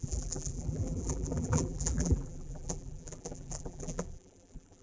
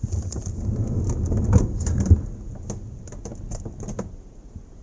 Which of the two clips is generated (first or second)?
first